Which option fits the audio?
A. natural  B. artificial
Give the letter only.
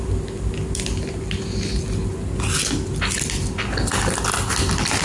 A